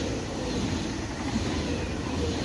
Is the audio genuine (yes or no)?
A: yes